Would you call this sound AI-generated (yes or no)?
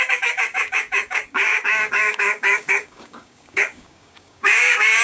yes